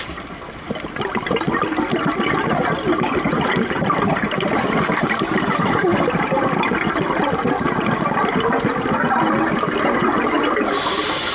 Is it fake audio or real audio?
real